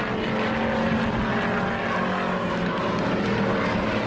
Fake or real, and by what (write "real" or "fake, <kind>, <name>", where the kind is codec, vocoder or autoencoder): real